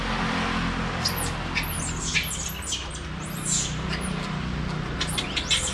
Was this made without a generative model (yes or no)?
yes